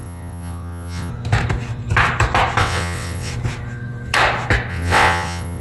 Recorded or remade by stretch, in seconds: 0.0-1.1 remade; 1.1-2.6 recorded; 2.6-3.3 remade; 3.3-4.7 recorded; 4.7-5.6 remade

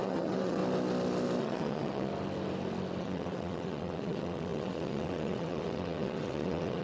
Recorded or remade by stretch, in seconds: 0.0-0.6 remade; 0.6-1.4 recorded; 1.4-2.1 remade; 2.1-3.0 recorded; 3.0-6.8 remade

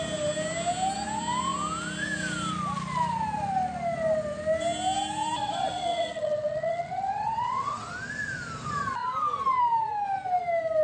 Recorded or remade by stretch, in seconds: 0.0-5.4 recorded; 5.4-7.9 remade; 7.9-10.8 recorded